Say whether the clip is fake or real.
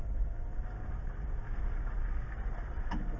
real